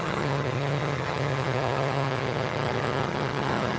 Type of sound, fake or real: fake